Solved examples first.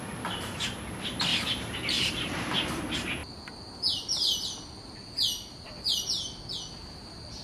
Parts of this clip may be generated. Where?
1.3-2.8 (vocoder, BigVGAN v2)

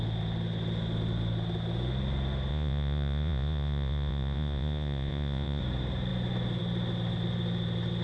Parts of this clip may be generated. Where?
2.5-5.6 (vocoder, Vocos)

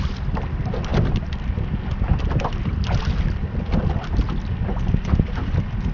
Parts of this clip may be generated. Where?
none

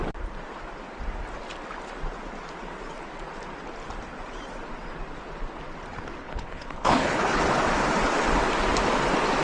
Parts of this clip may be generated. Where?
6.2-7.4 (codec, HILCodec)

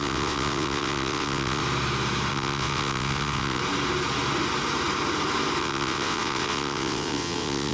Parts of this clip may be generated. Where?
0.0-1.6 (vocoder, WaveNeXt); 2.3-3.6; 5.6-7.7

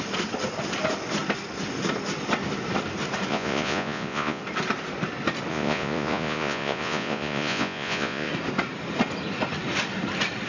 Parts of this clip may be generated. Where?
3.3-4.4 (vocoder, Vocos); 5.5-8.3